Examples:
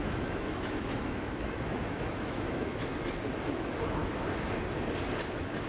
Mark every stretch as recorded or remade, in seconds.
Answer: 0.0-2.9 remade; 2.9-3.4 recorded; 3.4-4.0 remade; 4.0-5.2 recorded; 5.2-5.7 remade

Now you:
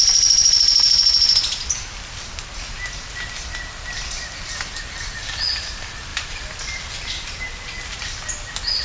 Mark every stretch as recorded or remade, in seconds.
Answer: 0.0-8.8 recorded

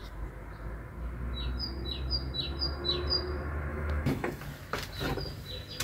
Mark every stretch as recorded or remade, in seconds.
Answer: 0.0-3.7 recorded; 3.7-4.4 remade; 4.4-5.8 recorded

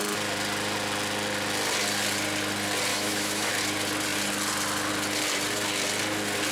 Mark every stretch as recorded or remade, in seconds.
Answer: 0.0-2.9 recorded; 2.9-3.5 remade; 3.5-6.5 recorded